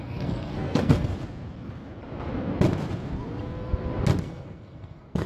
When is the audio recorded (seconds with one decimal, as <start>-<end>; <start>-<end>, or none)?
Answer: 1.1-4.2